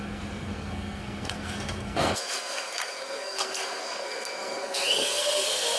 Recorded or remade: remade